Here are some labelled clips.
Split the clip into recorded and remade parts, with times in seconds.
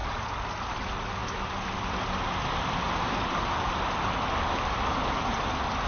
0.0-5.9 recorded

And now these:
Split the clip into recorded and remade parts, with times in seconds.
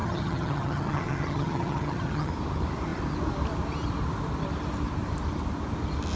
0.0-2.3 remade; 2.3-6.2 recorded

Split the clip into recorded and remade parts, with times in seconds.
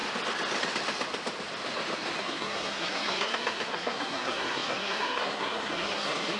0.0-2.2 recorded; 2.2-6.4 remade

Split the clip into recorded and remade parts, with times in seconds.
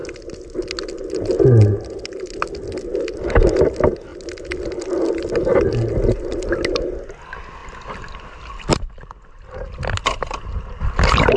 0.0-11.4 recorded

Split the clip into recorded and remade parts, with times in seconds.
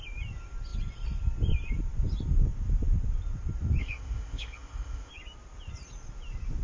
0.0-3.8 recorded; 3.8-5.1 remade; 5.1-6.6 recorded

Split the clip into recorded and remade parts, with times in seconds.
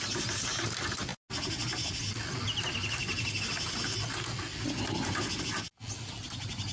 0.0-6.7 recorded